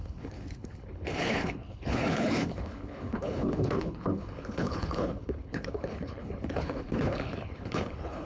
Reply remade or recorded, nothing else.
remade